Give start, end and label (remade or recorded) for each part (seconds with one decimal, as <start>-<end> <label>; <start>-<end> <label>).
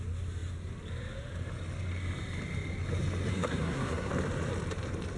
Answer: 0.0-3.3 recorded; 3.3-4.1 remade; 4.1-5.2 recorded